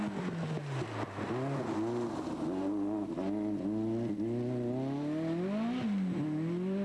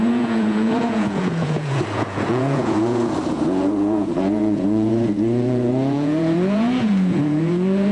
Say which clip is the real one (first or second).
first